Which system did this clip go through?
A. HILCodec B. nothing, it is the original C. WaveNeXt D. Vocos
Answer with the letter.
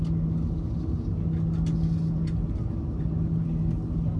B